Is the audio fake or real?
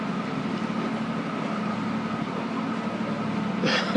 real